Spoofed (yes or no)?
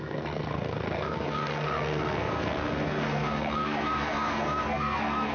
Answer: yes